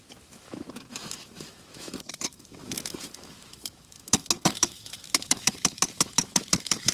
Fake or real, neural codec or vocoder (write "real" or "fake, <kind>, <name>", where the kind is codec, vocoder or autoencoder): fake, autoencoder, DAC-VAE